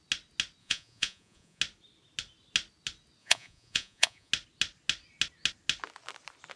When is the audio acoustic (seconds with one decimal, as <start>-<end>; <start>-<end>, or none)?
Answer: 0.0-0.6; 1.6-3.2; 4.3-6.6